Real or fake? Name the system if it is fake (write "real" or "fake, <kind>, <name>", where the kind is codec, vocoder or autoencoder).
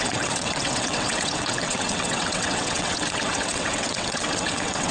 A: fake, vocoder, WaveNeXt